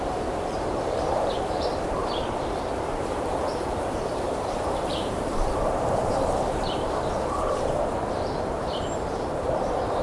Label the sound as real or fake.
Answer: fake